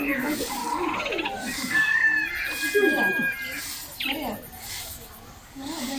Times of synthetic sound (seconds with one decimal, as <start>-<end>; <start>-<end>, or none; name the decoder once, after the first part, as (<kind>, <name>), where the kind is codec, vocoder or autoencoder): 0.0-0.6 (codec, DAC); 1.5-2.0; 4.7-6.0